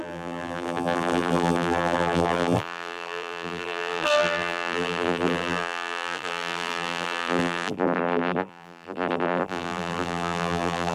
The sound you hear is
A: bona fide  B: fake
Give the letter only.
B